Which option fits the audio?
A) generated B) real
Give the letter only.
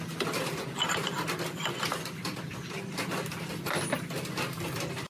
B